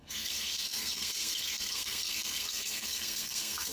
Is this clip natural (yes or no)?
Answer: no